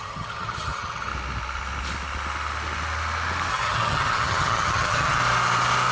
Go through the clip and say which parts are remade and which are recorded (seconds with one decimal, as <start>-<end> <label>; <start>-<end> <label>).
0.0-1.1 remade; 1.1-3.5 recorded; 3.5-5.2 remade; 5.2-5.9 recorded

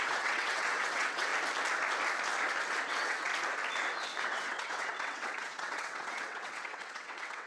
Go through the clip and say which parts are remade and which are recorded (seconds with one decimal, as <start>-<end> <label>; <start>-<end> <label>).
0.0-1.3 remade; 1.3-2.9 recorded; 2.9-3.3 remade; 3.3-4.2 recorded; 4.2-7.5 remade